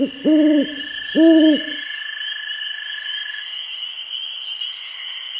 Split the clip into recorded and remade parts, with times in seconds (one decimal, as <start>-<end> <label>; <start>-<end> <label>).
0.0-5.4 recorded